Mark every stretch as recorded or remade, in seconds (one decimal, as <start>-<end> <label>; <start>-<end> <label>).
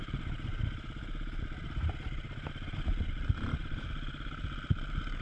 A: 0.0-5.2 recorded